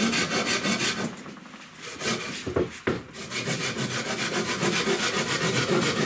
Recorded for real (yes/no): yes